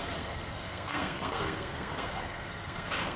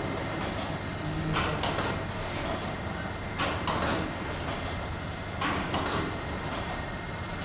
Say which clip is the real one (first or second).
second